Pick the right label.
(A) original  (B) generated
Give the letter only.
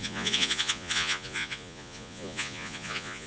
B